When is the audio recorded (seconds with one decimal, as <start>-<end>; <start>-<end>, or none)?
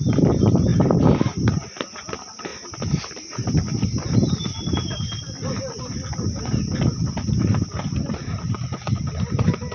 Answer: 0.0-9.7